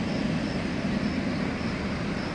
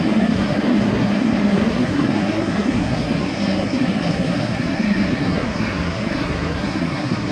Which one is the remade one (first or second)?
second